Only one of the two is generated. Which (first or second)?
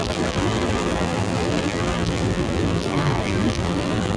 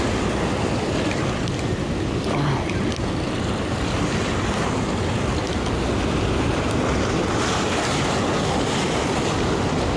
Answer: first